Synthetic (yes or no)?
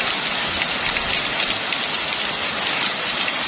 no